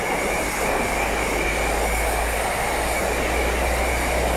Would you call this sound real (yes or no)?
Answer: yes